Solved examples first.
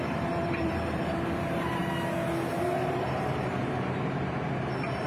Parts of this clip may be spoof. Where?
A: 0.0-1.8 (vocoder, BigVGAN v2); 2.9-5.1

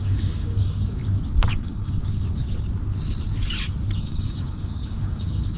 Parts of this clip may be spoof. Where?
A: 0.0-1.0 (codec, DAC); 1.5-2.4; 4.0-5.6

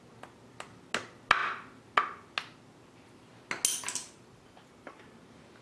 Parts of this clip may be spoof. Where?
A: 4.0-5.0 (vocoder, BigVGAN v2)

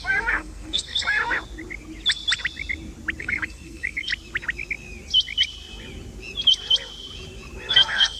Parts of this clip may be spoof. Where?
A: 0.0-1.2 (codec, SNAC); 3.2-4.1; 7.7-8.2

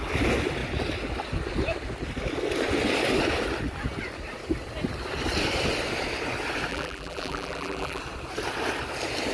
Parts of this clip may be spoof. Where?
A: 6.7-8.0 (vocoder, BigVGAN v2)

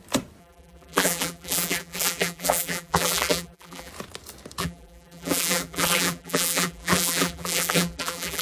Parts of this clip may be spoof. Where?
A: 0.4-3.9 (vocoder, BigVGAN v2); 4.6-8.4